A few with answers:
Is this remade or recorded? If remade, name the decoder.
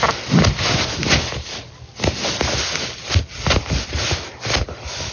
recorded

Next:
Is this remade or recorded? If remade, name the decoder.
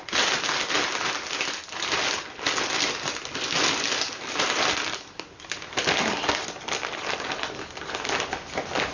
recorded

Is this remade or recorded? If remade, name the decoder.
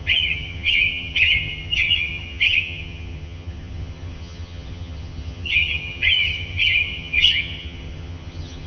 remade, vocoder, HiFi-GAN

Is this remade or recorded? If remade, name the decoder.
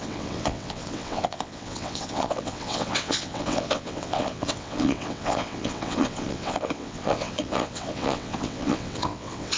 remade, vocoder, WaveNeXt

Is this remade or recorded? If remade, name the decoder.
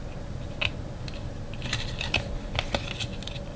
recorded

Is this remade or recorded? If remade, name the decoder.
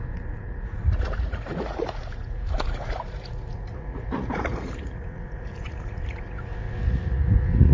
remade, vocoder, Vocos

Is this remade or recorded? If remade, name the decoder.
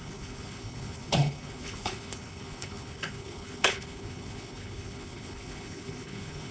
remade, codec, HILCodec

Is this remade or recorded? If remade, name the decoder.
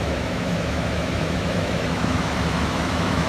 remade, autoencoder, DAC-VAE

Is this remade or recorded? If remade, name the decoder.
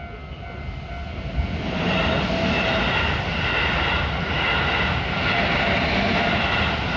recorded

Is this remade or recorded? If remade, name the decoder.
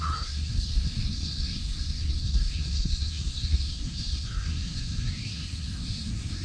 remade, codec, SNAC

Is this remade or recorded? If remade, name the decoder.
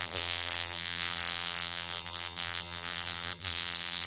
remade, vocoder, BigVGAN v2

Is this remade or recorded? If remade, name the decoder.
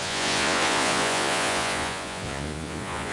remade, vocoder, Vocos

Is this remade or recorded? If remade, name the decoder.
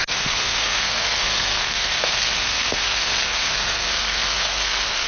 remade, codec, SNAC